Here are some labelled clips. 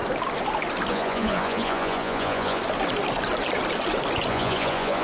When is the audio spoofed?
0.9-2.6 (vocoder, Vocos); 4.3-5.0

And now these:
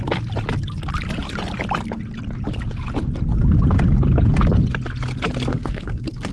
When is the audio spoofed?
5.5-6.3 (codec, SNAC)